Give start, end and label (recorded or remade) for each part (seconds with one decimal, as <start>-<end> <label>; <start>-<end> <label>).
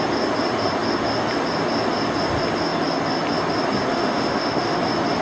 0.0-3.9 recorded; 3.9-4.8 remade; 4.8-5.2 recorded